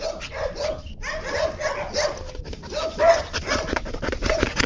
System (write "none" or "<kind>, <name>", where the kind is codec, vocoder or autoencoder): none